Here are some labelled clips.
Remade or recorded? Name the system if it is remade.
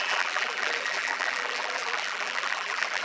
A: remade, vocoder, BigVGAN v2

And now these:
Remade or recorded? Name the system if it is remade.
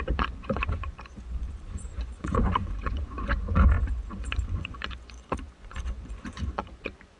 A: remade, vocoder, Vocos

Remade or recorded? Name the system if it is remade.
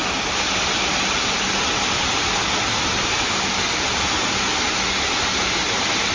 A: recorded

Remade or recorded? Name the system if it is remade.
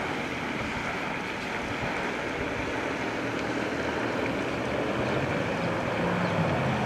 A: recorded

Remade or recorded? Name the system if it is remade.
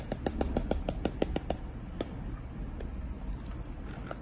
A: recorded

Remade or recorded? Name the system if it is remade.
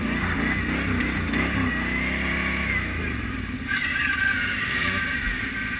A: recorded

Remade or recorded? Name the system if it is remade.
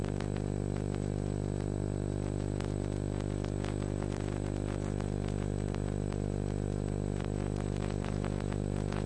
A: remade, vocoder, BigVGAN v2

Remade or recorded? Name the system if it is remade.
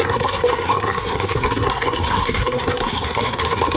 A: remade, codec, SNAC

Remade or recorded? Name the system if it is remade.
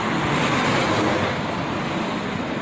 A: recorded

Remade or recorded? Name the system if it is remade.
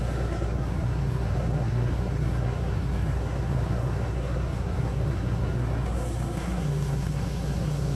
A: remade, codec, SNAC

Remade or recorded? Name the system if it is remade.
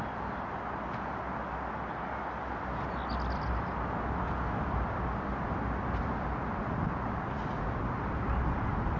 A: recorded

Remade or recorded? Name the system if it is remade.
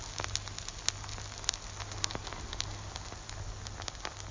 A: recorded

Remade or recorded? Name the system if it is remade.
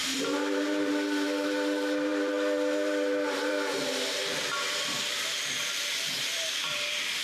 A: remade, vocoder, BigVGAN v2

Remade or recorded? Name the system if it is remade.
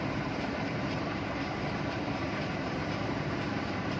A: remade, vocoder, BigVGAN v2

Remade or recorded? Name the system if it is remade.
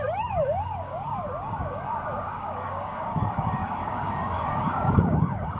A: remade, codec, DAC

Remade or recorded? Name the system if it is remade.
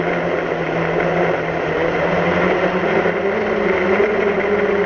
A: recorded